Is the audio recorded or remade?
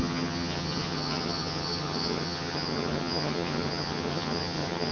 remade